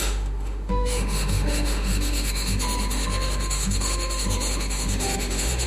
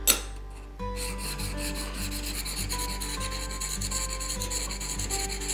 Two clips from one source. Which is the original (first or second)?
second